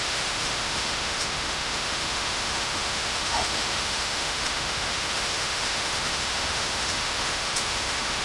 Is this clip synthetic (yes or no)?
yes